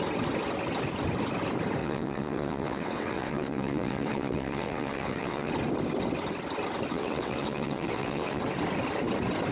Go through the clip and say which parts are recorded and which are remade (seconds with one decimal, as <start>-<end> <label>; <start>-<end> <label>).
0.0-1.8 recorded; 1.8-5.5 remade; 5.5-6.9 recorded; 6.9-8.4 remade; 8.4-9.5 recorded